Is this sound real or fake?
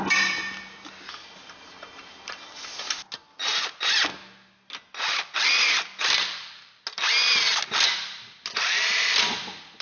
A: real